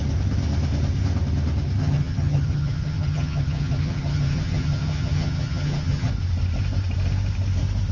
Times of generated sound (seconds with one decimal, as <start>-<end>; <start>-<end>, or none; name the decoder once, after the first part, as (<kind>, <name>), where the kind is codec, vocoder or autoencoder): 1.8-6.1 (vocoder, HiFi-GAN)